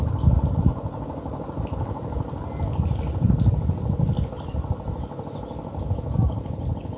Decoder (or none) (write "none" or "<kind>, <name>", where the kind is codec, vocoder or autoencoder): none